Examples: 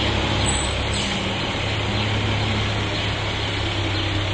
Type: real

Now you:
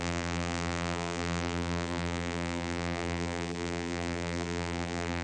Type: fake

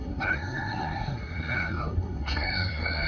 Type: fake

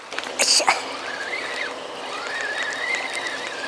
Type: real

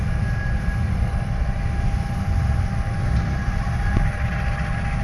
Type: real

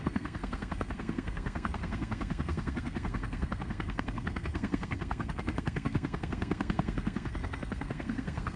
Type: fake